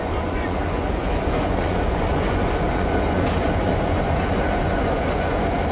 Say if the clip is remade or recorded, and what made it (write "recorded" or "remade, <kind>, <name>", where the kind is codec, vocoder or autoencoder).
remade, vocoder, Vocos